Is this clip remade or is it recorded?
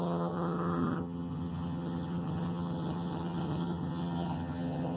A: remade